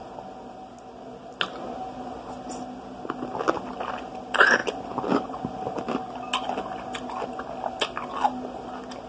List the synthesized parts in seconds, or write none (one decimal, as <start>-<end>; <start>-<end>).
none

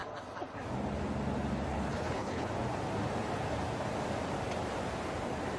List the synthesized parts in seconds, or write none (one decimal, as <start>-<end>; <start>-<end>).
1.7-2.5